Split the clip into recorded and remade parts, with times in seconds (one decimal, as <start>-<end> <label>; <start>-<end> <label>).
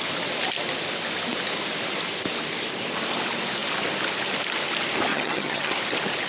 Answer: 0.0-5.1 recorded; 5.1-5.7 remade; 5.7-6.3 recorded